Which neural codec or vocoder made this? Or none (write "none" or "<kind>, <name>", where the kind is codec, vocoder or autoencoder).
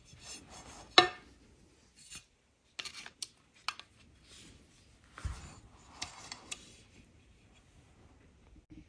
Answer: none